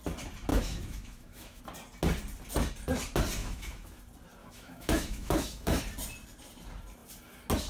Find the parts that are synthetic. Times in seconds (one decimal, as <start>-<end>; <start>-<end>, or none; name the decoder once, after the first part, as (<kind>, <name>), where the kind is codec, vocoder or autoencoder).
0.5-1.6 (autoencoder, DAC-VAE); 3.4-4.0; 4.4-5.8